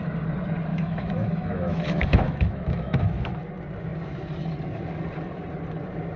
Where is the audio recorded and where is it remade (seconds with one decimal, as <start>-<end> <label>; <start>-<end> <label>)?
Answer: 0.0-0.7 recorded; 0.7-3.4 remade; 3.4-6.2 recorded